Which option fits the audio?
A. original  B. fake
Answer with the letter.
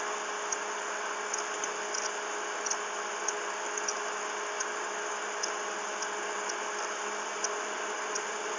A